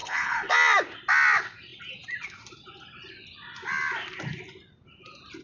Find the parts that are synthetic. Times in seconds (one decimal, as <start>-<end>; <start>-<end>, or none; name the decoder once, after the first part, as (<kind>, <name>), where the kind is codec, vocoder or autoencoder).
0.0-0.5 (codec, HILCodec)